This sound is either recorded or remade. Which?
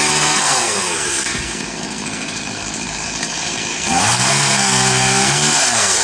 remade